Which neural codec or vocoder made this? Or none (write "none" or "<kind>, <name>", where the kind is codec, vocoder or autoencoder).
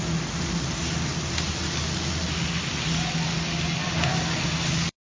none